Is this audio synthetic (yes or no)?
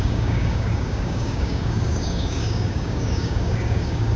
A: yes